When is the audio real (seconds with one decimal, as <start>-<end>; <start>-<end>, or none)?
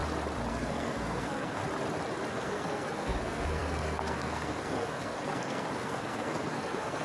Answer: 0.0-0.5; 1.6-2.3